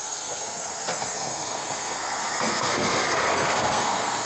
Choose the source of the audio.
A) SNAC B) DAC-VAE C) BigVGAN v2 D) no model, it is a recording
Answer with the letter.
A